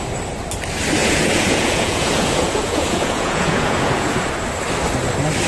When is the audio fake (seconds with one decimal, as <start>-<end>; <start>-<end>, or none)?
1.0-4.3